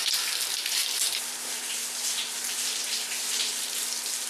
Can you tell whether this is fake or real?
real